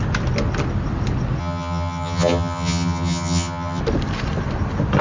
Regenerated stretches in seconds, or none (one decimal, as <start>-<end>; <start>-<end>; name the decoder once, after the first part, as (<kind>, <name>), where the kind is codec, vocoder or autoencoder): 1.4-3.8 (vocoder, HiFi-GAN)